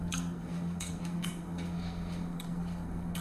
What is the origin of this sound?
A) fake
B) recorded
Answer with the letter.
A